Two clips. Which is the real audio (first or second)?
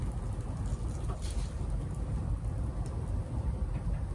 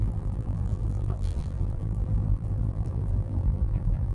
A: first